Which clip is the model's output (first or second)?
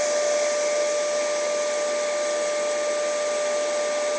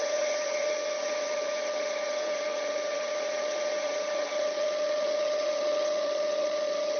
second